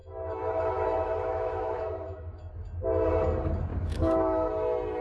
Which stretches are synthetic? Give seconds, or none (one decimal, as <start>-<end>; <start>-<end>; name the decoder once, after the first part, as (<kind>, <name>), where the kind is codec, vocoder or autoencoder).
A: 0.0-2.5 (autoencoder, DAC-VAE); 3.7-4.5